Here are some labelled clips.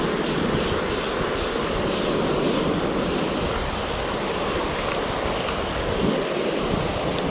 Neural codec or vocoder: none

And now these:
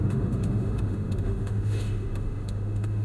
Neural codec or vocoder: autoencoder, DAC-VAE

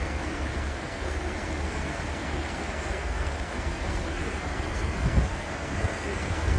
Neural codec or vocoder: codec, SNAC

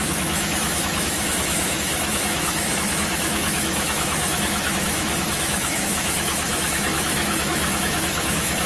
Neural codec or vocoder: autoencoder, DAC-VAE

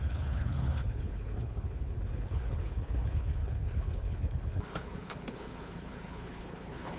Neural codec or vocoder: codec, HILCodec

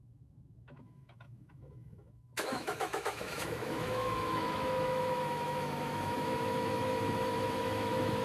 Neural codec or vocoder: autoencoder, DAC-VAE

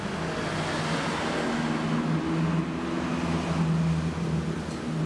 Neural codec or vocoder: none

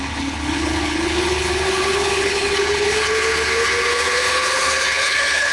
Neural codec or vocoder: codec, HILCodec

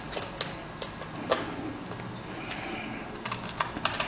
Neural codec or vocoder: none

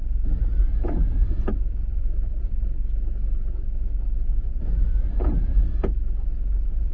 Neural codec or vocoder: none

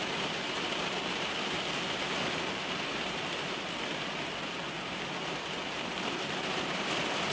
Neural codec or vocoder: none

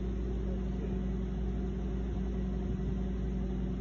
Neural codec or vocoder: none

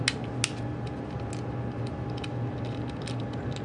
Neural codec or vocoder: none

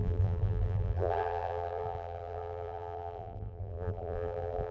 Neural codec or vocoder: vocoder, BigVGAN v2